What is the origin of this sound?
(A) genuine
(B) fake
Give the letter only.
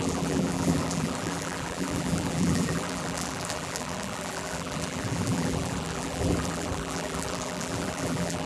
B